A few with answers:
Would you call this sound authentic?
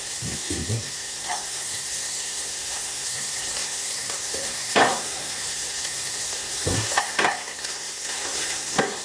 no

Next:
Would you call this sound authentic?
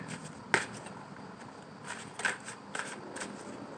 yes